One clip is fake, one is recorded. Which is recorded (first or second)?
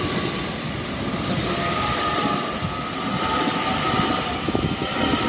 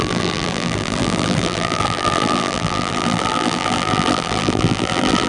first